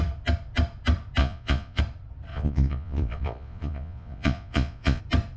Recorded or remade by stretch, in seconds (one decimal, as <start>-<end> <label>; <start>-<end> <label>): 0.0-1.2 recorded; 1.2-1.8 remade; 1.8-2.3 recorded; 2.3-5.0 remade; 5.0-5.4 recorded